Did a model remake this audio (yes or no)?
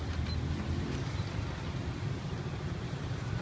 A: no